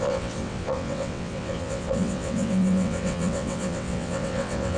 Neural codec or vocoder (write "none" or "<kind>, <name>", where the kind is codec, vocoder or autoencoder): vocoder, WaveNeXt